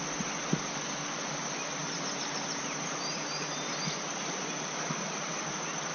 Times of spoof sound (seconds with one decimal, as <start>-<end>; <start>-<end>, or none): none